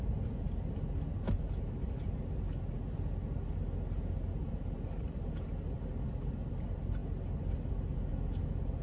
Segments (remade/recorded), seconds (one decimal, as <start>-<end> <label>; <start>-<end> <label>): 0.0-8.8 recorded